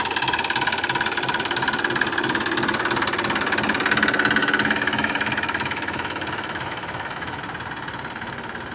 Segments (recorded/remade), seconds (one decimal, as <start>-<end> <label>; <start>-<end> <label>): 0.0-4.4 recorded; 4.4-7.4 remade; 7.4-8.7 recorded